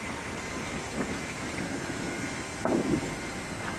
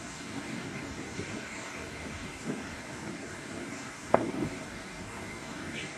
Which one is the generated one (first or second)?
second